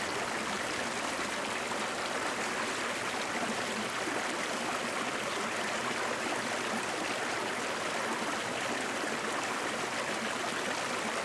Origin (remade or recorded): recorded